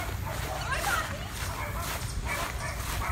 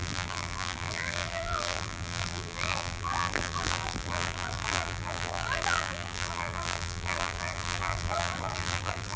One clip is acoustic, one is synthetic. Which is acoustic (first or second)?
first